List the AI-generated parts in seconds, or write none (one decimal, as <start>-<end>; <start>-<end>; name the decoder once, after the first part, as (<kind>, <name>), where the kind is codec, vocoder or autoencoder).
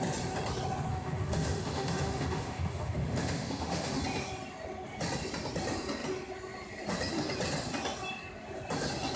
0.9-4.0 (autoencoder, DAC-VAE)